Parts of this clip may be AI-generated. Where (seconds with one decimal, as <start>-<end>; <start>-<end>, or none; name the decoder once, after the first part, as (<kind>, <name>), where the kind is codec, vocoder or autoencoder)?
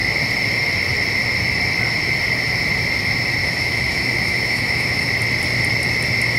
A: 3.4-5.1 (autoencoder, DAC-VAE)